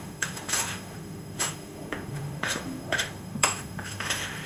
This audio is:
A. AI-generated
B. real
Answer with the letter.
A